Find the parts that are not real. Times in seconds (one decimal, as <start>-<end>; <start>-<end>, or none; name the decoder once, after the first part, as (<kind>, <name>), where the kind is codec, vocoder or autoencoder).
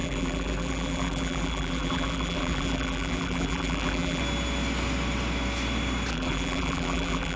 0.0-4.2 (vocoder, BigVGAN v2); 6.1-7.4